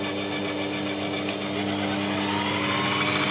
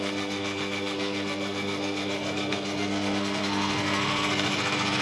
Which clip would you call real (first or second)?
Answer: first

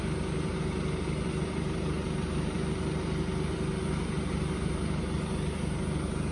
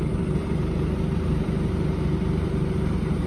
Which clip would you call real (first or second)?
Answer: first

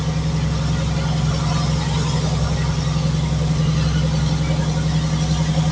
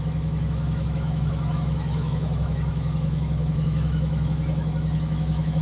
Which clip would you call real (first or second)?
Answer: first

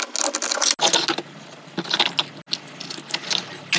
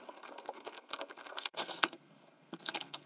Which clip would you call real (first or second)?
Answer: first